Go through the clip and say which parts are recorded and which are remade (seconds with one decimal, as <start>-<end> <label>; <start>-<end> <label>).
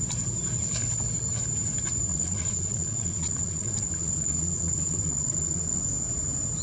0.0-2.1 recorded; 2.1-5.8 remade; 5.8-6.6 recorded